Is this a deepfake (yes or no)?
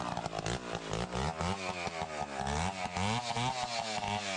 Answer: no